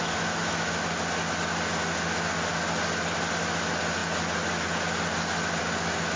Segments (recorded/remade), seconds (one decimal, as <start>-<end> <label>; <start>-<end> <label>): 0.0-0.8 remade; 0.8-6.2 recorded